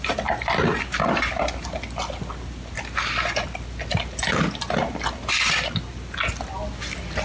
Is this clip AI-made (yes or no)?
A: no